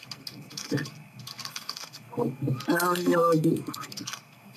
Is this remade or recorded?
remade